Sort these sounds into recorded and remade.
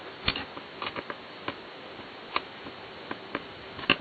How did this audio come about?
recorded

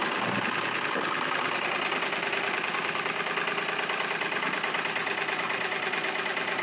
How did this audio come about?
recorded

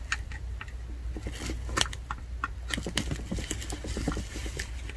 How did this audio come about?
recorded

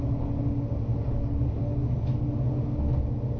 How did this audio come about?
recorded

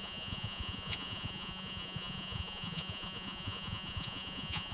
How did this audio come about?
remade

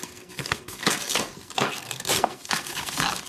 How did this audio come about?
remade